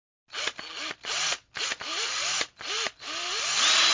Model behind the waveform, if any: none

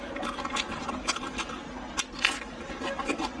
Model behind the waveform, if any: none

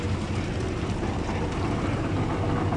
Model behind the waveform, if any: none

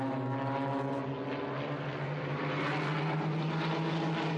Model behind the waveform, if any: none